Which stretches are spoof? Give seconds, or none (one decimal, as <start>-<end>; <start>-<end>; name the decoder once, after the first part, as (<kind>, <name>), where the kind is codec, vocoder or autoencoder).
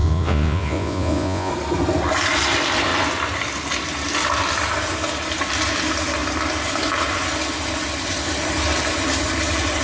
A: 0.0-1.5 (vocoder, Vocos)